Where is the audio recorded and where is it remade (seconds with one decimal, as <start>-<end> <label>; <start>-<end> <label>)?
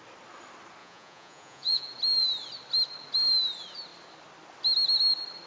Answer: 0.0-0.8 recorded; 0.8-1.9 remade; 1.9-5.5 recorded